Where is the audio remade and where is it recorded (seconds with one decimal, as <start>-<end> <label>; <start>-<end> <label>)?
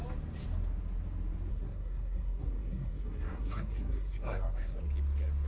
0.0-1.5 recorded; 1.5-4.8 remade; 4.8-5.5 recorded